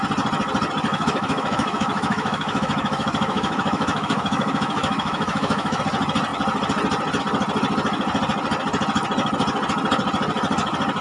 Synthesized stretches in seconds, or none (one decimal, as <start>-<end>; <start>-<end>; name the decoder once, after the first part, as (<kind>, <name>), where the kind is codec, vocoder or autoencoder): 0.9-5.8 (autoencoder, DAC-VAE)